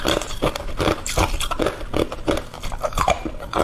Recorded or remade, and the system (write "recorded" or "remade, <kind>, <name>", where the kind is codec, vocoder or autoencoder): recorded